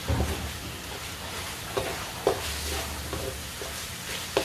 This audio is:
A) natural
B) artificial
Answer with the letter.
A